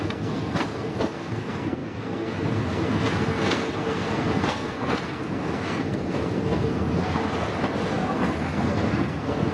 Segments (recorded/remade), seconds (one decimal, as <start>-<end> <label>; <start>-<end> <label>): 0.0-7.2 remade; 7.2-7.9 recorded; 7.9-9.5 remade

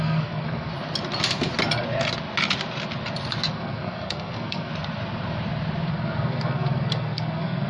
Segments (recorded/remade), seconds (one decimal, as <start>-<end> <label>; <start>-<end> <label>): 0.0-0.7 remade; 0.7-3.5 recorded; 3.5-4.7 remade; 4.7-5.9 recorded; 5.9-7.7 remade

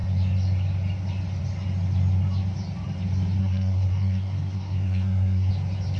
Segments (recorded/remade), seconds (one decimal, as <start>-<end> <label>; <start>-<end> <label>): 0.0-3.4 recorded; 3.4-5.5 remade; 5.5-6.0 recorded

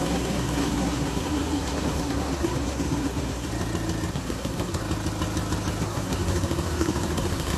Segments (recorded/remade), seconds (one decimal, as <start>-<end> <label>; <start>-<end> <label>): 0.0-3.5 remade; 3.5-4.1 recorded; 4.1-4.8 remade; 4.8-5.8 recorded; 5.8-7.6 remade

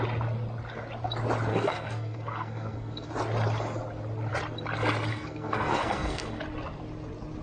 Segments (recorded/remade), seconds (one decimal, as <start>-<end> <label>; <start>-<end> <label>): 0.0-1.5 recorded; 1.5-3.1 remade; 3.1-5.1 recorded; 5.1-6.4 remade; 6.4-7.4 recorded

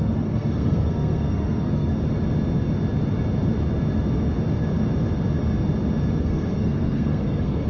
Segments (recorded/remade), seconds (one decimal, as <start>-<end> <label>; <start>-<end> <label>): 0.0-1.9 remade; 1.9-6.2 recorded; 6.2-7.7 remade

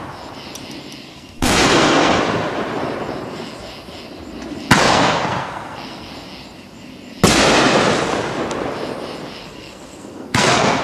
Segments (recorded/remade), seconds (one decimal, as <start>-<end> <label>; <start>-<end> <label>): 0.0-1.1 recorded; 1.1-2.2 remade; 2.2-4.8 recorded; 4.8-6.1 remade; 6.1-9.4 recorded; 9.4-10.8 remade